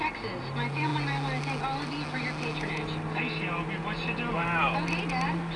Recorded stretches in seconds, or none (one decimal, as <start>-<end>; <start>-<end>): 0.0-5.6

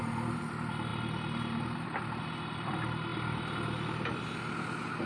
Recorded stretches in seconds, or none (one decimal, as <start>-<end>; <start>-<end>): 0.0-5.1

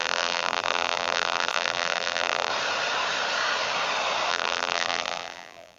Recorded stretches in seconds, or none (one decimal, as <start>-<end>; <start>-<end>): 2.5-4.3

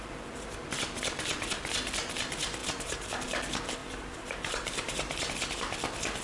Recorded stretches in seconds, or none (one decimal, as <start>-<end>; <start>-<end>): 0.0-2.6; 3.2-3.8; 5.3-6.2

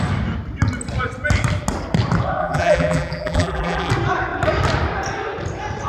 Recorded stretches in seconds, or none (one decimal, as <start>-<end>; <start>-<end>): 0.0-2.4; 3.9-5.9

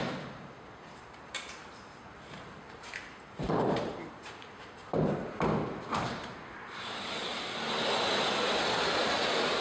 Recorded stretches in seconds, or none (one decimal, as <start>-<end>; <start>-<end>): 7.2-9.0